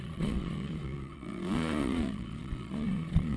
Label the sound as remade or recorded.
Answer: remade